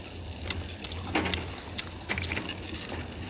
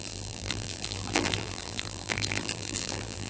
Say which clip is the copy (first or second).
second